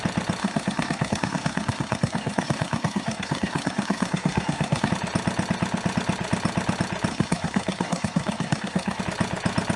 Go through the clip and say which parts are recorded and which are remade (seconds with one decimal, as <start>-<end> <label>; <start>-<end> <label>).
0.0-0.4 recorded; 0.4-4.9 remade; 4.9-7.1 recorded; 7.1-9.0 remade; 9.0-9.8 recorded